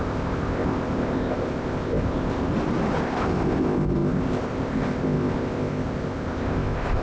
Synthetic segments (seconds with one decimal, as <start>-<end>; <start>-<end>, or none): 0.0-2.5; 3.0-7.0